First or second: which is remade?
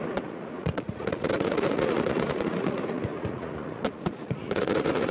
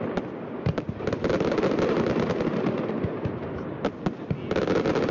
first